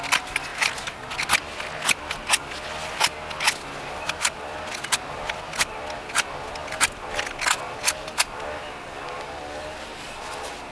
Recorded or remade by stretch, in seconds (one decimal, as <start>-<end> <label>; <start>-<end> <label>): 0.0-10.7 recorded